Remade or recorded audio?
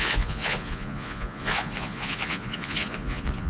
remade